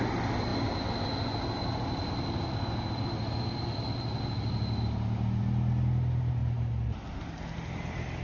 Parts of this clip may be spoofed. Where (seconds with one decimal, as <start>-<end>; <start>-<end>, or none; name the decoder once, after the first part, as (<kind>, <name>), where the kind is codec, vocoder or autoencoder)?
none